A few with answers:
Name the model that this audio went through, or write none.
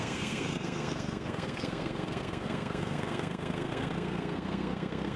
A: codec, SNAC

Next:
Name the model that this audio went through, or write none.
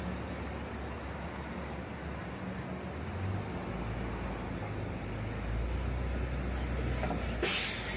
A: none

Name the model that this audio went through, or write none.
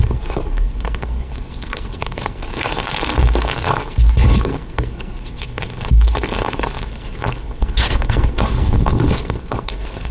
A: codec, SNAC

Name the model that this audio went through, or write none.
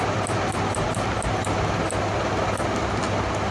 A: none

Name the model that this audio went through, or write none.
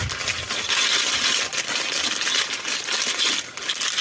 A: none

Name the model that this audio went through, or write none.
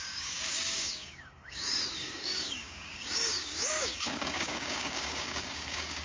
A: codec, DAC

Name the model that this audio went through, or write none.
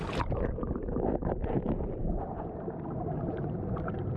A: vocoder, BigVGAN v2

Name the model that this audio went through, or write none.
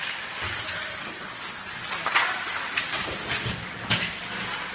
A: none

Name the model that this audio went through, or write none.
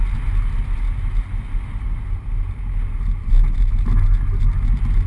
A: none